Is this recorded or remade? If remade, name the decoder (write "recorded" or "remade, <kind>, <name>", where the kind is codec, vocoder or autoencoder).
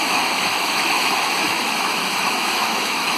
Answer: remade, autoencoder, DAC-VAE